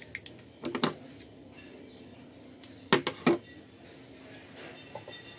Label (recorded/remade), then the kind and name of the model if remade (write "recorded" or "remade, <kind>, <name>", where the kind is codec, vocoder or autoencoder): recorded